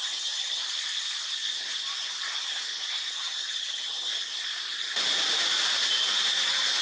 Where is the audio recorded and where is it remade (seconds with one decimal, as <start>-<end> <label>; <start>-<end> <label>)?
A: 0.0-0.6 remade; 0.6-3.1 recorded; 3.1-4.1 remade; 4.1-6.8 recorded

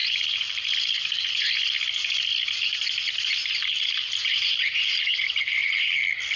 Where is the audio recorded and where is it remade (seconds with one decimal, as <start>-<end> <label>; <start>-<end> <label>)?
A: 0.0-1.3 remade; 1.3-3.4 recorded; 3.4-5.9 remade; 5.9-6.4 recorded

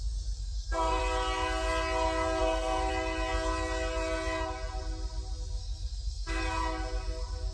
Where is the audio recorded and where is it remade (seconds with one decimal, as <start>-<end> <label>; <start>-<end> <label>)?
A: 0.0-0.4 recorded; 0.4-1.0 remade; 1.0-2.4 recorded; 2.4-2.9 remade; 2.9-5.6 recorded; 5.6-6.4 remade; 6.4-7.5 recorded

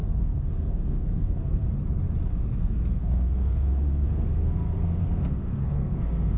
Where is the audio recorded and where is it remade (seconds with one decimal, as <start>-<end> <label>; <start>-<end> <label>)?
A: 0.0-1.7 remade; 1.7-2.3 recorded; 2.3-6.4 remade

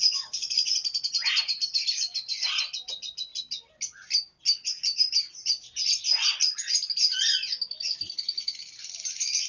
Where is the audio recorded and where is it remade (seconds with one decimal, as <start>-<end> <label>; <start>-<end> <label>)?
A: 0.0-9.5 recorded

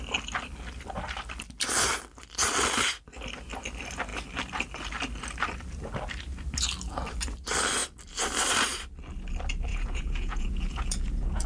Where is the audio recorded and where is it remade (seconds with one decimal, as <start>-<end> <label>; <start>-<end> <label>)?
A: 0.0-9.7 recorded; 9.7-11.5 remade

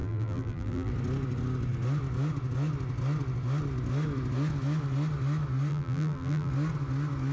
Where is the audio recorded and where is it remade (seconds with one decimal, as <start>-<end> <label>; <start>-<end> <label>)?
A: 0.0-0.9 remade; 0.9-5.7 recorded; 5.7-6.5 remade; 6.5-7.3 recorded